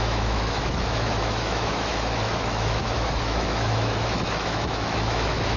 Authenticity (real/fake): fake